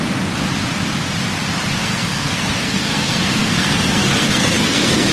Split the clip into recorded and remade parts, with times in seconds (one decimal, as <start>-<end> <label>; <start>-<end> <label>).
0.0-1.8 recorded; 1.8-5.1 remade